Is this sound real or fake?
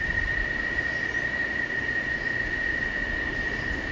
real